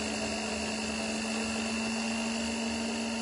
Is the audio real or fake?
real